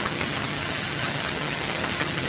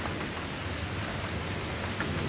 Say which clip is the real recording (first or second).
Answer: second